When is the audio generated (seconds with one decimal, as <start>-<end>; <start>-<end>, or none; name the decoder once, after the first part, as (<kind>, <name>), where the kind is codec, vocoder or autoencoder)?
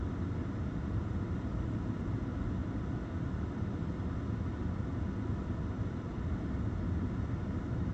none